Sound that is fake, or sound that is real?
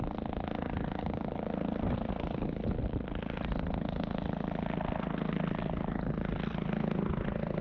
real